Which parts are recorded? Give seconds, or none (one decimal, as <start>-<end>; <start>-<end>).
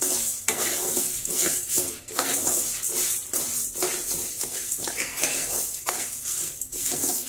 2.7-4.3